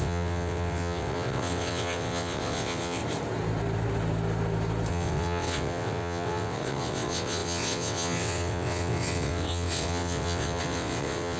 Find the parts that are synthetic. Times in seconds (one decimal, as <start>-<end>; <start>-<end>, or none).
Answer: 0.0-3.0; 4.9-11.4